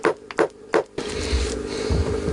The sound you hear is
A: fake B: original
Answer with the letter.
B